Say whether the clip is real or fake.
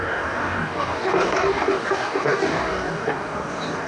fake